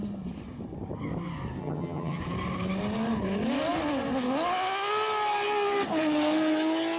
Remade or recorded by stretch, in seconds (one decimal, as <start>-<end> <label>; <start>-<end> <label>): 0.0-1.6 recorded; 1.6-2.2 remade; 2.2-7.0 recorded